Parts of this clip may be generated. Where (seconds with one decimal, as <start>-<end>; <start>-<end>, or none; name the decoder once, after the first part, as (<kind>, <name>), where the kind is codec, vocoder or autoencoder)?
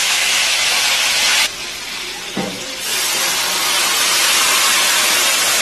0.0-1.2 (autoencoder, DAC-VAE)